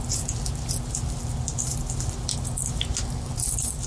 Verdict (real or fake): real